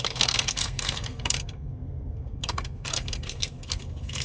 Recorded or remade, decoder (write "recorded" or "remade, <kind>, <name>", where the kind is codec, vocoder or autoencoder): remade, codec, SNAC